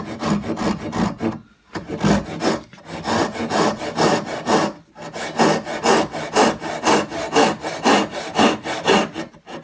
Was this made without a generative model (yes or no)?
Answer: yes